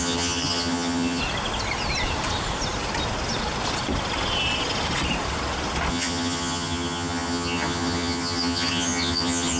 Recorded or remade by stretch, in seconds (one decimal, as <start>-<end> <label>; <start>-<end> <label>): 0.0-1.2 remade; 1.2-5.9 recorded; 5.9-9.6 remade